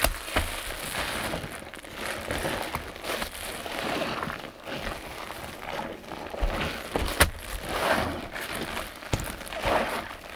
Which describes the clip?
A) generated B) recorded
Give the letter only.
B